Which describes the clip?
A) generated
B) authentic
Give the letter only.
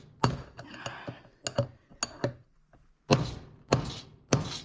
B